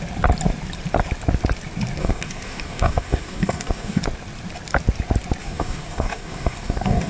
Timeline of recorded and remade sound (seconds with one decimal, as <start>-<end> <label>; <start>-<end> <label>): 0.0-2.0 recorded; 2.0-4.0 remade; 4.0-5.4 recorded; 5.4-7.1 remade